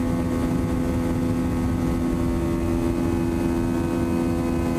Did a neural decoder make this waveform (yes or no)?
no